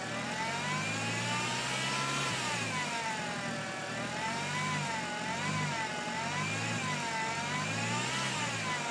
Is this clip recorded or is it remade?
recorded